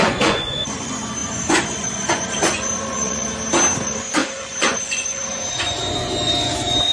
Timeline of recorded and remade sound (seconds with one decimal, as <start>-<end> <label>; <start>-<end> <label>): 0.0-3.3 remade; 3.3-3.8 recorded; 3.8-6.9 remade